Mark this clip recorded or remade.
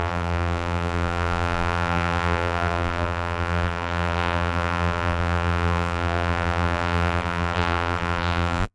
remade